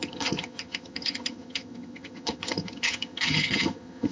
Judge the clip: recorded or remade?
remade